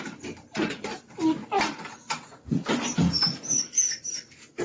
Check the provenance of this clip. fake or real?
real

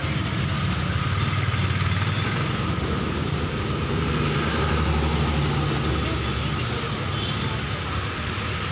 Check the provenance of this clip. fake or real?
real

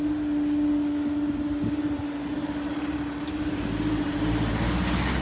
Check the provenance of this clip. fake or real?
real